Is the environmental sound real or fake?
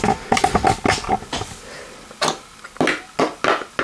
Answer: real